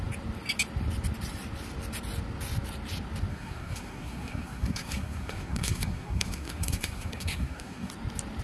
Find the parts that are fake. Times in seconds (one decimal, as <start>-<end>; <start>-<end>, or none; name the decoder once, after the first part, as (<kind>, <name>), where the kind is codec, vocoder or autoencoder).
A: 3.3-7.9 (codec, SNAC)